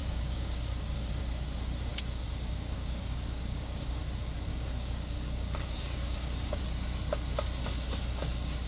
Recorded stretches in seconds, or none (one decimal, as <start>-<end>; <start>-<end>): 1.1-1.9; 4.0-4.5; 6.6-8.7